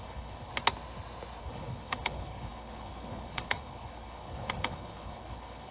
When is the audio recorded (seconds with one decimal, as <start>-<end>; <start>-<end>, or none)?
0.5-1.4